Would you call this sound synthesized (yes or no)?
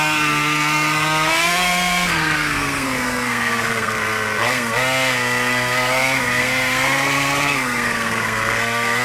yes